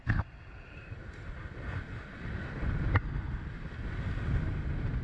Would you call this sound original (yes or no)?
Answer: yes